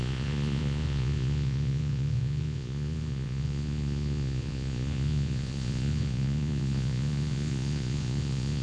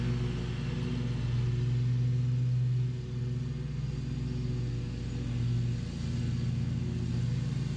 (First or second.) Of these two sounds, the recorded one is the second